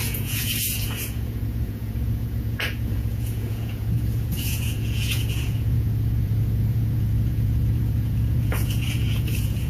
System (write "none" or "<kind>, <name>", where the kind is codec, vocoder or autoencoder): vocoder, Vocos